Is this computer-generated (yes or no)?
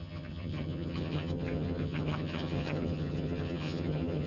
yes